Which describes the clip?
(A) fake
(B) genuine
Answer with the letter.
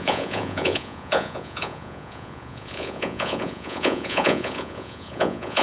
A